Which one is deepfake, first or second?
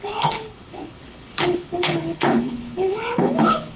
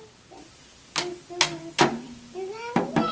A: first